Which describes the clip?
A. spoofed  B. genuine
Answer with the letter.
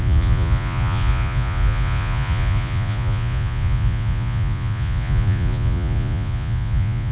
A